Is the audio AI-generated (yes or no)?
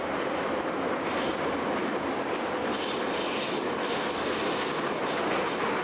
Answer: no